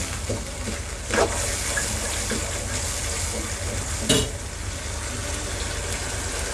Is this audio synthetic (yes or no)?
no